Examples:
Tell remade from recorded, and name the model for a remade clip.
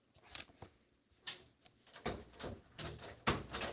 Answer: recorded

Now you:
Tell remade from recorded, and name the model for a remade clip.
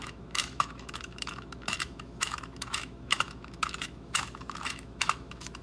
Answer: remade, autoencoder, DAC-VAE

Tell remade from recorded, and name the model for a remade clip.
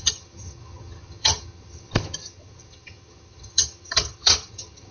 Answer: remade, vocoder, HiFi-GAN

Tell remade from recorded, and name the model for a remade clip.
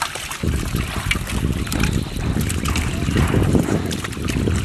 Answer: recorded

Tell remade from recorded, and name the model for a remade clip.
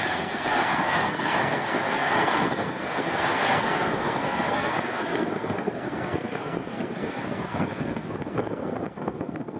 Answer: remade, codec, SNAC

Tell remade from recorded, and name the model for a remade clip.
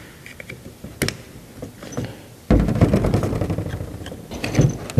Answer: recorded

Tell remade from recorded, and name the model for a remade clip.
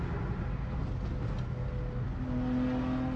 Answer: recorded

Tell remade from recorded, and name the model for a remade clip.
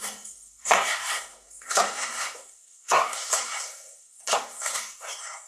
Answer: remade, codec, SNAC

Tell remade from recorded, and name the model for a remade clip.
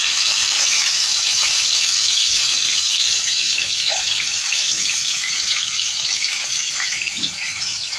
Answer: remade, autoencoder, DAC-VAE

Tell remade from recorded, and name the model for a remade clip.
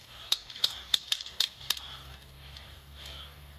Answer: remade, codec, DAC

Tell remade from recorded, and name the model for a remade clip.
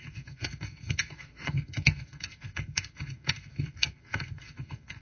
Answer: remade, codec, SNAC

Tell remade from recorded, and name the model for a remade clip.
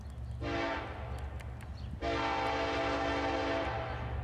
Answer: recorded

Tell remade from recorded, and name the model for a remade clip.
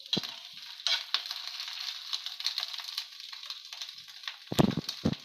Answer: recorded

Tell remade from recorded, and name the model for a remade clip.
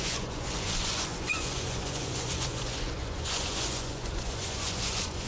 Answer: remade, vocoder, Vocos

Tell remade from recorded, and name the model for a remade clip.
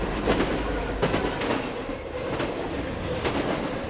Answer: recorded